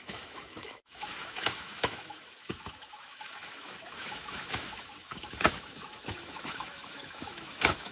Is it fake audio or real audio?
fake